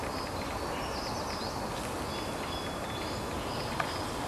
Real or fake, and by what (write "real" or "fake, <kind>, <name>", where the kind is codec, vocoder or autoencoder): real